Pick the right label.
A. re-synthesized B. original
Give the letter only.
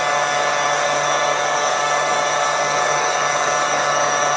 A